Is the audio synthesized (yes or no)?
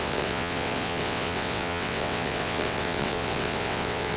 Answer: yes